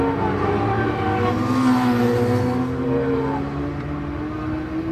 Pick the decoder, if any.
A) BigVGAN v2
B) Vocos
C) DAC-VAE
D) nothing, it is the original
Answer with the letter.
D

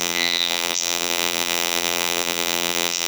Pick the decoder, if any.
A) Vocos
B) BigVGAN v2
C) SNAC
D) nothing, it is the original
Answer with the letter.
B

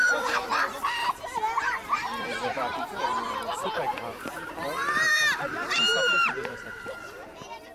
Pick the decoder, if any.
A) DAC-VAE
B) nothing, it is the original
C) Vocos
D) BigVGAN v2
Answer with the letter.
D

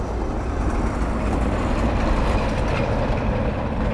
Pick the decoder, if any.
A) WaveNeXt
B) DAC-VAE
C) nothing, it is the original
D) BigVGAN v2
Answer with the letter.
C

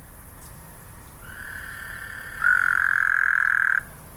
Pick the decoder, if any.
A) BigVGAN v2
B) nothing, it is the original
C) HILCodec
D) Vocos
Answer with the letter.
B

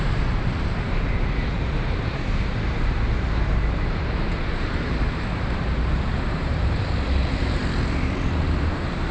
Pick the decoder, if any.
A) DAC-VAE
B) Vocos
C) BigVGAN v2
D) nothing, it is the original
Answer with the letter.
C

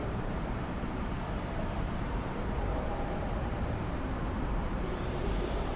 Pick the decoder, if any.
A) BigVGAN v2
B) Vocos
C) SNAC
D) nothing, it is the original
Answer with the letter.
A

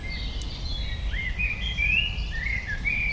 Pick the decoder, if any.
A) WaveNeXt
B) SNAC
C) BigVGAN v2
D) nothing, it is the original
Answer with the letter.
D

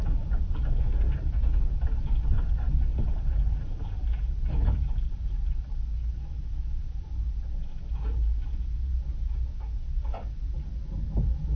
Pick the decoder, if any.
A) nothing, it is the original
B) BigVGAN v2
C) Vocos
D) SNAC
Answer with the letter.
B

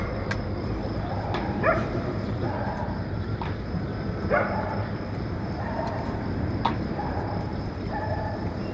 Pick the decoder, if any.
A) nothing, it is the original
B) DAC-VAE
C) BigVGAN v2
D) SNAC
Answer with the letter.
C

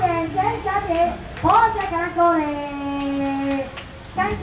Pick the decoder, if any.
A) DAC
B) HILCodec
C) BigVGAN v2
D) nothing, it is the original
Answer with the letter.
D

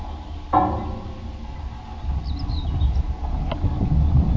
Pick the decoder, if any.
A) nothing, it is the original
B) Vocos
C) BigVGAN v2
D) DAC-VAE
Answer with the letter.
A